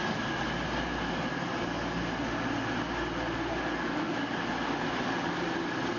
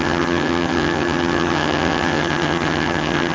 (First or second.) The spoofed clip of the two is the second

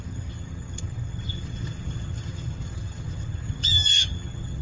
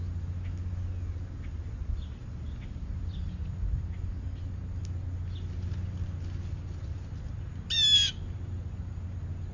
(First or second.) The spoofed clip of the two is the first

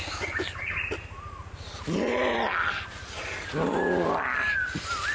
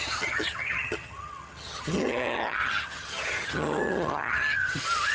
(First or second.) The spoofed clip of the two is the second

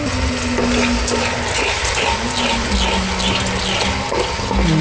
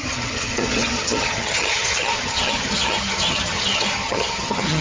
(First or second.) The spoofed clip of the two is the second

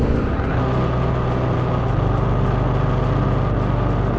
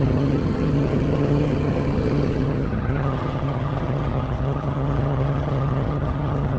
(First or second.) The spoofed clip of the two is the second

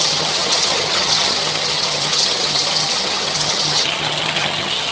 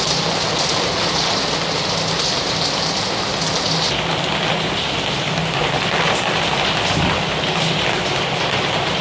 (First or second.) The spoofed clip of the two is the first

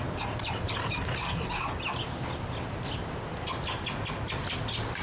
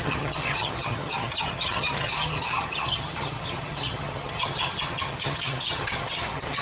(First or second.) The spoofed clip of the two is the second